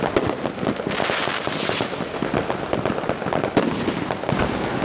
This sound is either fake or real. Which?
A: real